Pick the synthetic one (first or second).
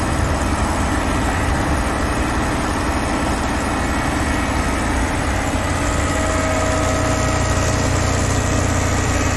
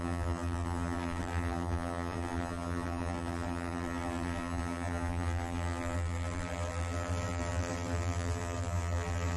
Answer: second